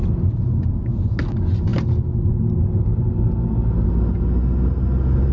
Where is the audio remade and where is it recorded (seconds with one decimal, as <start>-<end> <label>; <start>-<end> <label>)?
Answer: 0.0-5.3 recorded